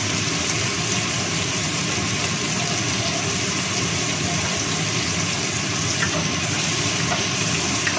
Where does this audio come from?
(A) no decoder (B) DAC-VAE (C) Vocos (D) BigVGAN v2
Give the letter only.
A